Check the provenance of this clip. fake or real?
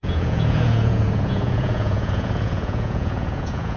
fake